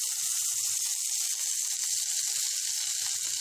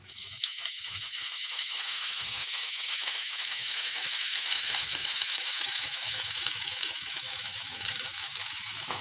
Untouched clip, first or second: first